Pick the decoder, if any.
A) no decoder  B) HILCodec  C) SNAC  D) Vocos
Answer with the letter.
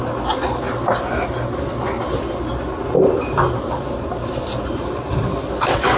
A